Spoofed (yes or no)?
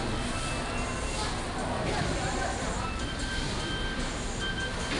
no